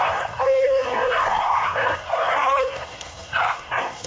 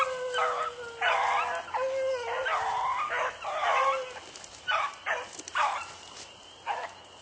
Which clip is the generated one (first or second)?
first